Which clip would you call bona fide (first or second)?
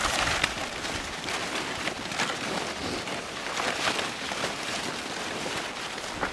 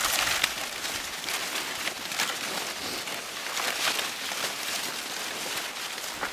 second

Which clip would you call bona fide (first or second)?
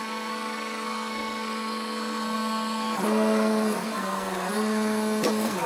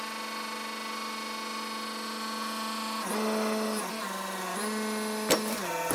second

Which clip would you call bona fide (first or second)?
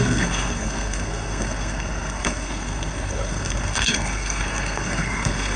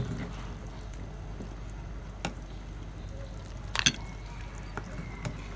second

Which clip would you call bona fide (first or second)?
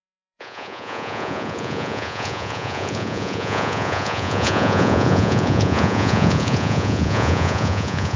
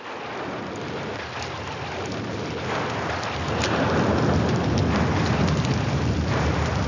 second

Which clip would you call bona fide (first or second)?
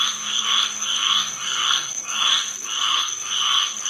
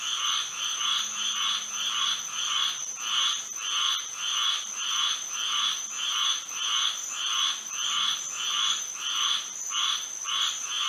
second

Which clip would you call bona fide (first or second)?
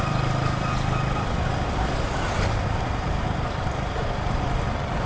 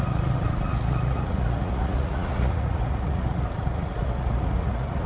first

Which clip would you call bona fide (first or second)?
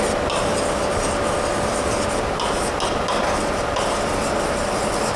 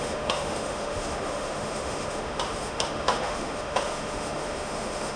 first